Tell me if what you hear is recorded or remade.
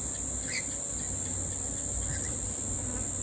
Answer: recorded